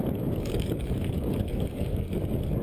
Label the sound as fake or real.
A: fake